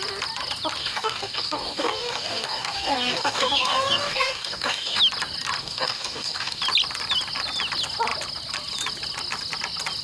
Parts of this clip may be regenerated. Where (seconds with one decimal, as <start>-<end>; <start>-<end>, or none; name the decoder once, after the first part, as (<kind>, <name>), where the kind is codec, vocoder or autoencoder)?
0.8-5.0 (codec, DAC); 5.6-6.6